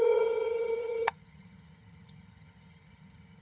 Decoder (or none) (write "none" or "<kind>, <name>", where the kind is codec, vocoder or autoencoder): vocoder, HiFi-GAN